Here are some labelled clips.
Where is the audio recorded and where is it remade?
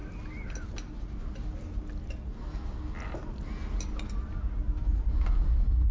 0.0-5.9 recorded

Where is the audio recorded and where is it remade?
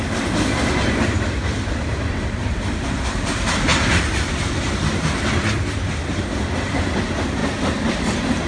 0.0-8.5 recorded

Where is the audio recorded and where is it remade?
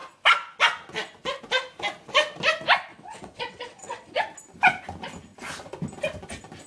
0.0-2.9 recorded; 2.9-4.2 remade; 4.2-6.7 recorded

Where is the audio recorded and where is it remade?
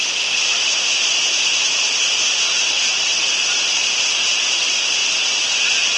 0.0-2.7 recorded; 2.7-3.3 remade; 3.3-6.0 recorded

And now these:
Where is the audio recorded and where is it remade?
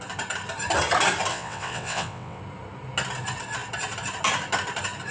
0.0-1.3 recorded; 1.3-2.4 remade; 2.4-5.1 recorded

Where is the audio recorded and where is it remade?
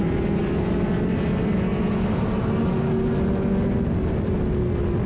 0.0-5.1 recorded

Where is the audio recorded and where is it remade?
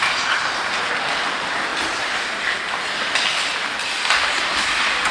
0.0-5.1 recorded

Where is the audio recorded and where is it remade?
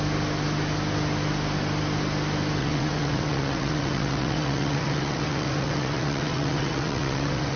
0.0-2.6 recorded; 2.6-7.6 remade